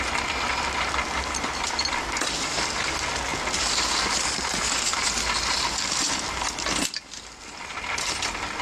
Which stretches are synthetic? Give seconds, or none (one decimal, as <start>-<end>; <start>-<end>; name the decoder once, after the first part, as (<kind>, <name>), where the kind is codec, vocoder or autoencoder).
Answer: none